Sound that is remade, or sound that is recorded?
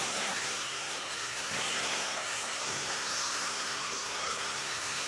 remade